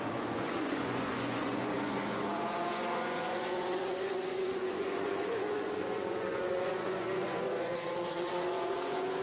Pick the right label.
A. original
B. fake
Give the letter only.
B